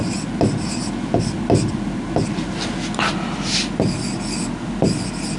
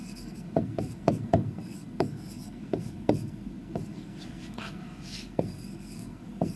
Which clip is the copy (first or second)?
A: second